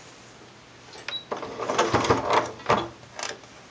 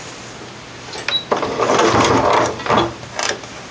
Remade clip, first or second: second